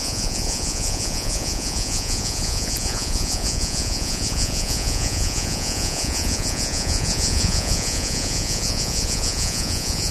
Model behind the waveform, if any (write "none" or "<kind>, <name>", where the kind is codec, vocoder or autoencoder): vocoder, Vocos